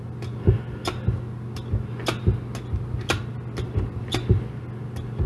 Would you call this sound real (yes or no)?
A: yes